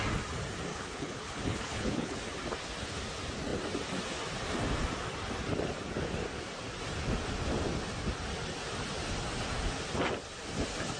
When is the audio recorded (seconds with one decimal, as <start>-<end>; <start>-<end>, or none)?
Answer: 0.0-0.7; 2.2-11.0